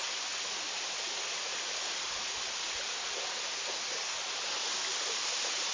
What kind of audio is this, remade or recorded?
recorded